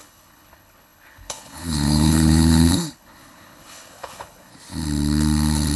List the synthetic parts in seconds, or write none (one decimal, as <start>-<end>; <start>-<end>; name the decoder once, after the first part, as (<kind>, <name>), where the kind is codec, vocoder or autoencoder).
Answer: 0.0-4.5 (codec, HILCodec)